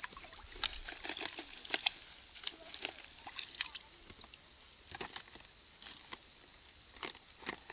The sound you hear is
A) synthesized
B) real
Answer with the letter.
B